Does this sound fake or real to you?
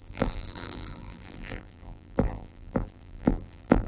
fake